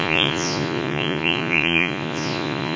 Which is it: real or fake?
fake